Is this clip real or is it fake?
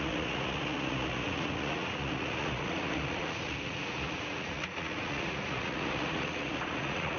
fake